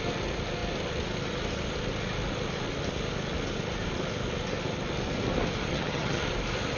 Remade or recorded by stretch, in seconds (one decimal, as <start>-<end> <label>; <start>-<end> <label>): 0.0-5.7 recorded; 5.7-6.2 remade; 6.2-6.8 recorded